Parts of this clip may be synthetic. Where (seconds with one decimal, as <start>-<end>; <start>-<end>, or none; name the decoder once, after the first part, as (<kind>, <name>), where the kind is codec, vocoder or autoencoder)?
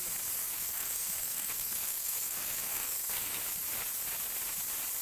0.4-3.4 (codec, SNAC)